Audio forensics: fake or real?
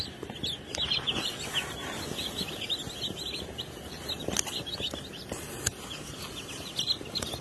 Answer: real